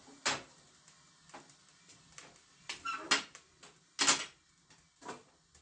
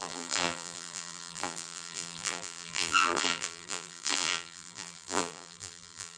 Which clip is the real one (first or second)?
first